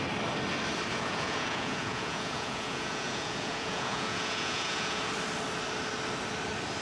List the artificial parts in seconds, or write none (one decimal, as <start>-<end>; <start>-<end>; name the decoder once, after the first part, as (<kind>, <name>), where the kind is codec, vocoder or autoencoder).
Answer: 0.9-5.0 (vocoder, Vocos)